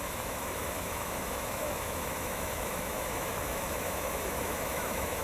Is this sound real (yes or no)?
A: no